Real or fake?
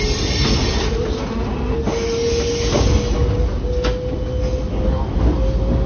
real